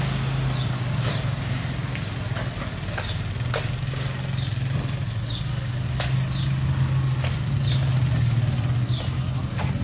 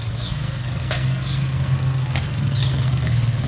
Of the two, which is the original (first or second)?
first